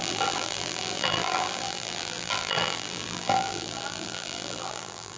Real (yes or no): no